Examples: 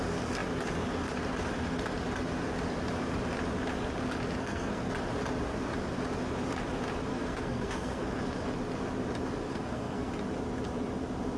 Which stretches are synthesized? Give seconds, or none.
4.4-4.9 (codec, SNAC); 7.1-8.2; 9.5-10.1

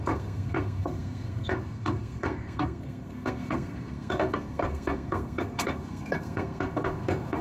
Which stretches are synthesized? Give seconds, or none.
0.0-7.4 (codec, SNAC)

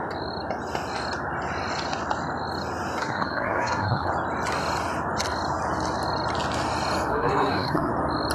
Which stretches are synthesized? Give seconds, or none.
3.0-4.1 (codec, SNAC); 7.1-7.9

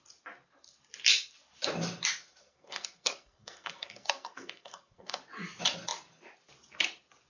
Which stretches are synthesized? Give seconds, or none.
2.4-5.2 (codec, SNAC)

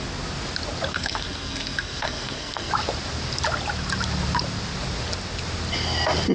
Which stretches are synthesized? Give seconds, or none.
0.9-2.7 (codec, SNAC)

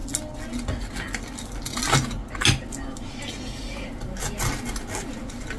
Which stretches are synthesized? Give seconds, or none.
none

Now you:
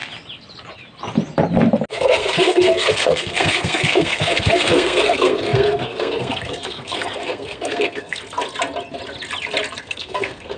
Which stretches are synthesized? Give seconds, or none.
1.9-8.2 (codec, SNAC); 9.8-10.6

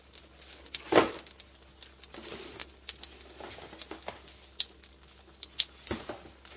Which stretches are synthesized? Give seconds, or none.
none